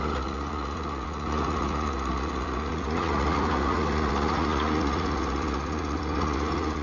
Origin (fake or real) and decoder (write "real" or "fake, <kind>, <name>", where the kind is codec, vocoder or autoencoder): fake, vocoder, Vocos